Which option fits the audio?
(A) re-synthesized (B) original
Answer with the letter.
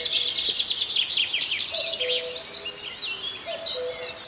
B